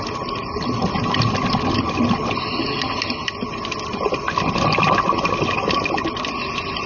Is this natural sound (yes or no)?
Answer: yes